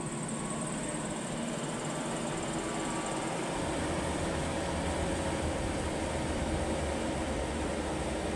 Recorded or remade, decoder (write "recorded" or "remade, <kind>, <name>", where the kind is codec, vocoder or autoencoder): recorded